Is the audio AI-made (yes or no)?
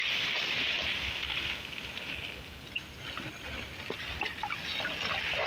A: no